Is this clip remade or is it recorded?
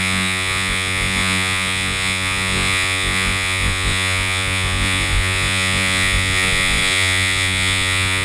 remade